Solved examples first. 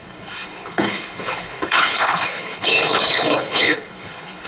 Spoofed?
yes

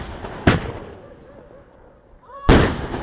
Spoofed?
no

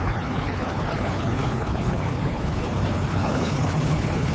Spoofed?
yes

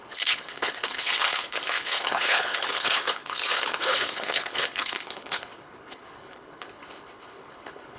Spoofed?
yes